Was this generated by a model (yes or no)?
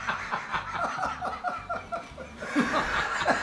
no